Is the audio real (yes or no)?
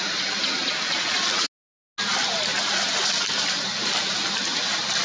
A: yes